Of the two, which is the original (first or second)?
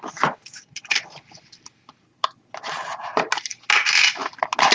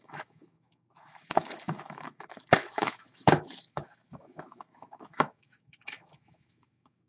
first